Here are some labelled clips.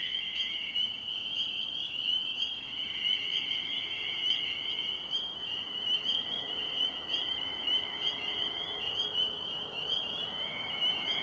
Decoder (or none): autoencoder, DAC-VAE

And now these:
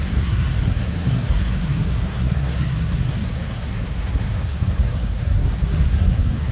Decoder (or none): codec, SNAC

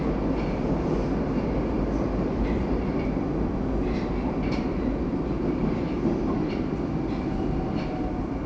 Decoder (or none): none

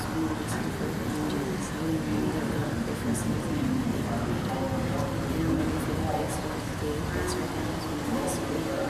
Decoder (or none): none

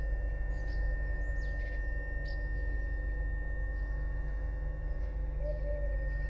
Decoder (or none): none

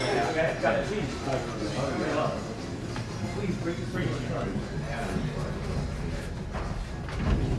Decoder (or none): none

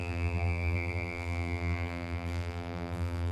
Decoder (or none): vocoder, BigVGAN v2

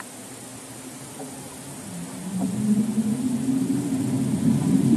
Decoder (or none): none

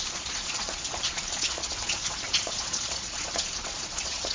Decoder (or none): vocoder, Vocos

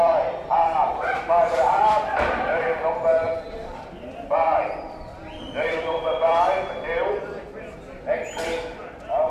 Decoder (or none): vocoder, BigVGAN v2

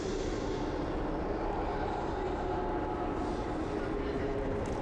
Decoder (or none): none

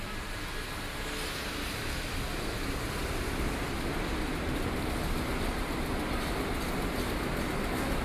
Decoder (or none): none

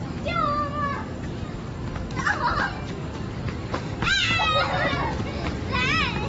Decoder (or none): none